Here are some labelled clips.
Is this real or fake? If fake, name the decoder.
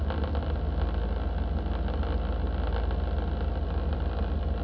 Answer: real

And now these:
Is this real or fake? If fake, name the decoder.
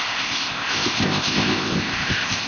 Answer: fake, codec, ZipCodec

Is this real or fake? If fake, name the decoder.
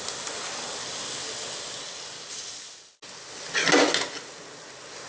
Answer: real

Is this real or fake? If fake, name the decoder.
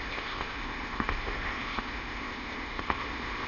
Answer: fake, codec, ZipCodec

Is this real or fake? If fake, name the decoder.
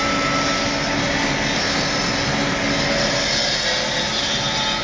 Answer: real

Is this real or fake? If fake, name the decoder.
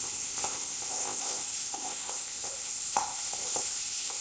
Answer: fake, codec, ZipCodec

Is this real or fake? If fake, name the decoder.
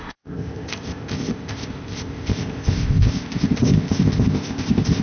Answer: fake, codec, ZipCodec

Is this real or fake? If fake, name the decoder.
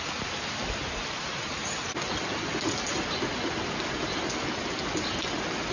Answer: real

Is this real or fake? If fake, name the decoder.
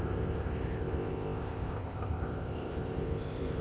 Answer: fake, codec, ZipCodec